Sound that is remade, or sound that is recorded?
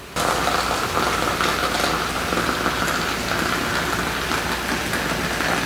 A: recorded